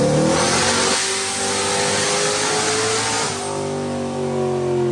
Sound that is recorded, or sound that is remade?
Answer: recorded